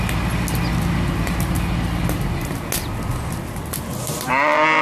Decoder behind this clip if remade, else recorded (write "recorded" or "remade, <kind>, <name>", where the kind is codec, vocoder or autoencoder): recorded